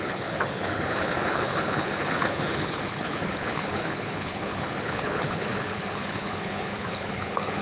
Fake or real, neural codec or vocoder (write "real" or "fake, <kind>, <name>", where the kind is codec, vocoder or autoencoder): fake, codec, HILCodec